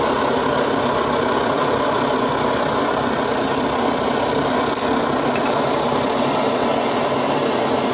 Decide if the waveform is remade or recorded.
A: recorded